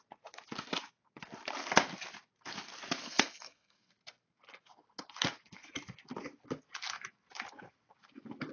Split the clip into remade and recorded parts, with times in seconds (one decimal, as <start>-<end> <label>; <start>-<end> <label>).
0.0-3.0 recorded; 3.0-3.9 remade; 3.9-8.5 recorded